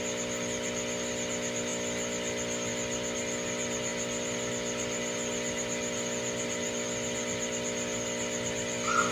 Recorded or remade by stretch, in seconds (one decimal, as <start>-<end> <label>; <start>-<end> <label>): 0.0-9.1 recorded